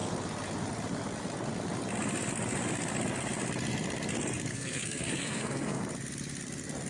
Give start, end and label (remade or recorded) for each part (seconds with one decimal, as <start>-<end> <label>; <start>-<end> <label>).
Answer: 0.0-4.5 recorded; 4.5-5.8 remade; 5.8-6.9 recorded